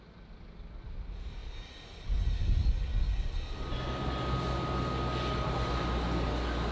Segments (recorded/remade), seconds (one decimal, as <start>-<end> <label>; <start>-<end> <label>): 0.0-6.7 recorded